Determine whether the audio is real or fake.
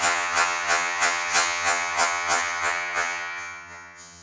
fake